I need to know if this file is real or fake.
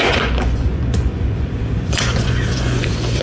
fake